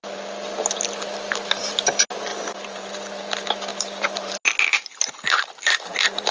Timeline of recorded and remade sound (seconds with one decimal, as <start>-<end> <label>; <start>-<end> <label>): 0.0-2.3 recorded; 2.3-2.9 remade; 2.9-3.7 recorded; 3.7-4.3 remade; 4.3-4.7 recorded; 4.7-6.3 remade